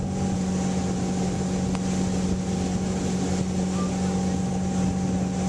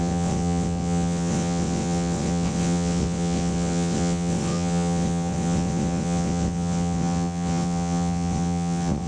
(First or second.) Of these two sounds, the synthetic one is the second